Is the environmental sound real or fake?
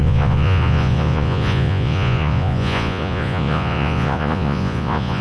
fake